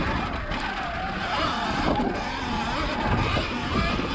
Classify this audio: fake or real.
real